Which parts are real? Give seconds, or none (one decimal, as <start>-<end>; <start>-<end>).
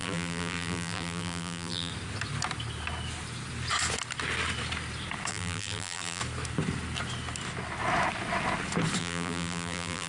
1.9-5.3; 6.2-9.0